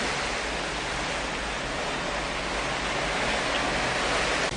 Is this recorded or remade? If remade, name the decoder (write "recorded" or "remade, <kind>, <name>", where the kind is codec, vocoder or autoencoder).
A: recorded